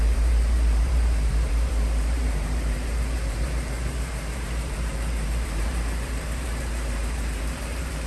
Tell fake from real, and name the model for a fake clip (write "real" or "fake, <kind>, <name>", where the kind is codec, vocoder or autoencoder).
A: fake, vocoder, BigVGAN v2